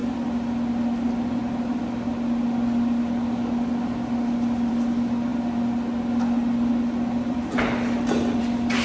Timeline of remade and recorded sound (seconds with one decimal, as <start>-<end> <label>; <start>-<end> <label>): 0.0-8.8 recorded